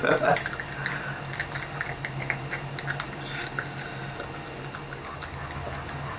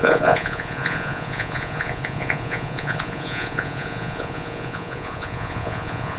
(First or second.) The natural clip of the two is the first